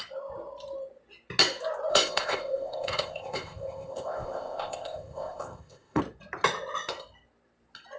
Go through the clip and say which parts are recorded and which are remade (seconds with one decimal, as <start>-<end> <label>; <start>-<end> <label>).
0.0-1.9 recorded; 1.9-6.0 remade; 6.0-8.0 recorded